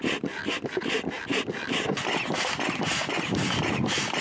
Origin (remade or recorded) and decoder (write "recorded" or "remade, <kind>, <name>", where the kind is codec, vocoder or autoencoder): recorded